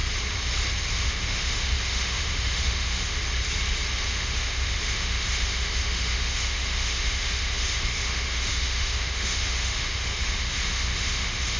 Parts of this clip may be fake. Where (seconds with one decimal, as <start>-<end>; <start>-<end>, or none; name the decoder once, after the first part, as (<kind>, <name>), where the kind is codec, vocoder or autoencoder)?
0.9-3.2 (autoencoder, DAC-VAE); 4.0-11.6